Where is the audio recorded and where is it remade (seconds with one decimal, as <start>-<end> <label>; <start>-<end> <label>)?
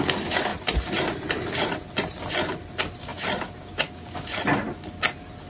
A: 0.0-0.5 recorded; 0.5-1.5 remade; 1.5-3.1 recorded; 3.1-4.4 remade; 4.4-5.5 recorded